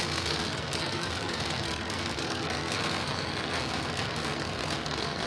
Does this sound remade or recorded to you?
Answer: remade